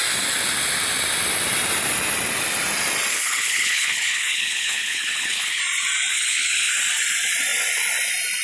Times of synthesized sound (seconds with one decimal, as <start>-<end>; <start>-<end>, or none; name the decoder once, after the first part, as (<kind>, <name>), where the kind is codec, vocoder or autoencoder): 3.1-5.6 (codec, HILCodec); 6.1-6.7